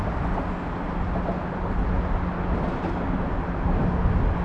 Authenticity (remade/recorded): recorded